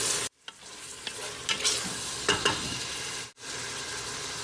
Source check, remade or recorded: recorded